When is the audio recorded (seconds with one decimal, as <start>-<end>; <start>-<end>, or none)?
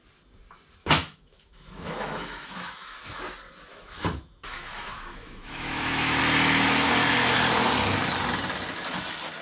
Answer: 0.0-0.8; 3.2-3.7; 6.2-9.4